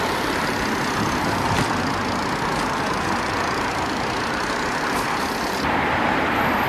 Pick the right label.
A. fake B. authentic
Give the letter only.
A